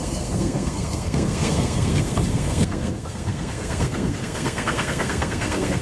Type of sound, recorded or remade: remade